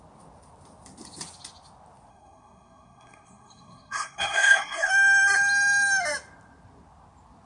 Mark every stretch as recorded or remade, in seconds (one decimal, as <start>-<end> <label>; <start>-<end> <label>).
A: 0.0-2.1 recorded; 2.1-4.9 remade; 4.9-7.5 recorded